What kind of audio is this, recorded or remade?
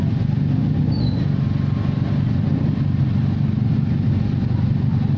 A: recorded